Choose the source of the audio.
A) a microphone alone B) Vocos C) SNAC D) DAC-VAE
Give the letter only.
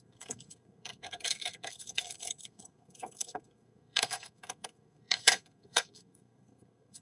C